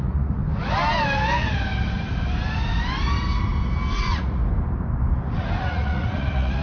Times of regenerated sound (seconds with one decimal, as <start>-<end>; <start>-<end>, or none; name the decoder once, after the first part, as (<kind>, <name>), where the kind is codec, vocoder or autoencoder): 0.0-0.4 (vocoder, Vocos); 3.9-4.4; 5.6-6.6